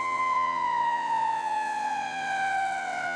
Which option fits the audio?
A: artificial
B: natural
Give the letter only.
A